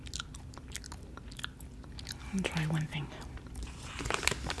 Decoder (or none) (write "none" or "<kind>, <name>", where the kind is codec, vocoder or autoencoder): none